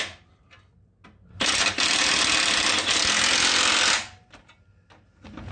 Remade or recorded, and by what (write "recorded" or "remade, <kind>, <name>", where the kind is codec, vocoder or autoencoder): recorded